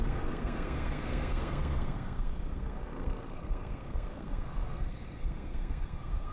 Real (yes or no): no